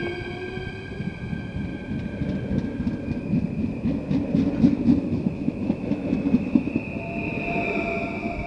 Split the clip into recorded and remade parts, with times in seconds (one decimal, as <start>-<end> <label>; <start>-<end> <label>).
0.0-5.0 recorded; 5.0-6.7 remade; 6.7-8.5 recorded